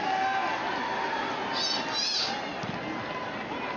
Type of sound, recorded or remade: recorded